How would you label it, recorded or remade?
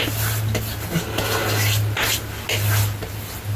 recorded